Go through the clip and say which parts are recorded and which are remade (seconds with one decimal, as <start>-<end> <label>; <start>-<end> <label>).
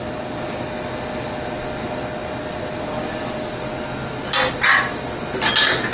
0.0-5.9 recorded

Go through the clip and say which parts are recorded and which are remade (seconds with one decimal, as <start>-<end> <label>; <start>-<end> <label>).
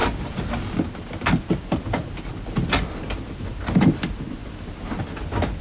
0.0-5.6 recorded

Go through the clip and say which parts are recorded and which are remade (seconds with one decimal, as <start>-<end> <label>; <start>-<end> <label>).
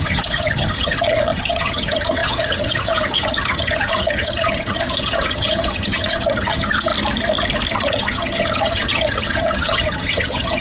0.0-6.9 remade; 6.9-7.7 recorded; 7.7-10.6 remade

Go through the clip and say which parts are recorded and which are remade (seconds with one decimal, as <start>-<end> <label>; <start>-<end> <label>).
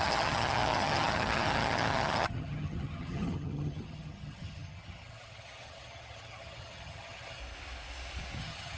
0.0-7.4 remade; 7.4-8.4 recorded; 8.4-8.8 remade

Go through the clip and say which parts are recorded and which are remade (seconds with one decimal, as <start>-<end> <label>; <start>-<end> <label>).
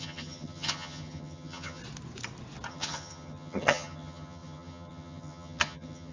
0.0-1.8 remade; 1.8-2.7 recorded; 2.7-6.1 remade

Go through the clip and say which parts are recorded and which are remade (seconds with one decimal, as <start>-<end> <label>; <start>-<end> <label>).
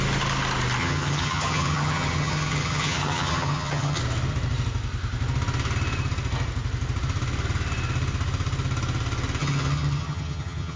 0.0-0.8 recorded; 0.8-4.0 remade; 4.0-9.4 recorded; 9.4-10.8 remade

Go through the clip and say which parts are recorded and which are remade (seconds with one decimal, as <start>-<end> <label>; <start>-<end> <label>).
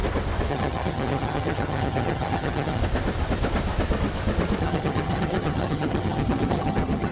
0.0-0.5 recorded; 0.5-2.8 remade; 2.8-4.6 recorded; 4.6-7.1 remade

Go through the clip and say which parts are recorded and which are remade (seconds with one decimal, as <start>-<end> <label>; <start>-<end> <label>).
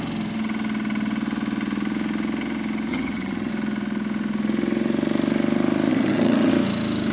0.0-2.9 recorded; 2.9-3.5 remade; 3.5-5.9 recorded; 5.9-6.5 remade; 6.5-7.1 recorded